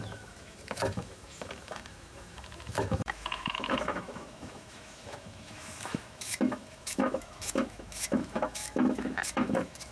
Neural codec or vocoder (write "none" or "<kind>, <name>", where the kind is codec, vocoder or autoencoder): autoencoder, DAC-VAE